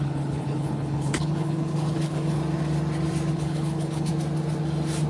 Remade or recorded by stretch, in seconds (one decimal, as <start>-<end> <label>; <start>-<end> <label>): 0.0-2.4 remade; 2.4-3.3 recorded; 3.3-4.1 remade; 4.1-5.1 recorded

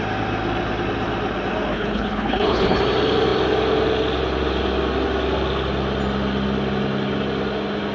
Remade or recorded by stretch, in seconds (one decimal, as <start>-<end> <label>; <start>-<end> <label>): 0.0-1.7 recorded; 1.7-2.8 remade; 2.8-7.9 recorded